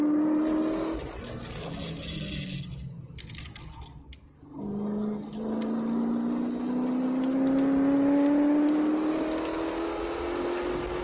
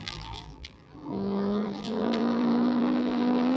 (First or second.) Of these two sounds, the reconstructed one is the second